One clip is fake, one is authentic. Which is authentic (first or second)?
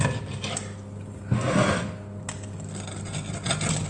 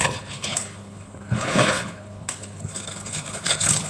first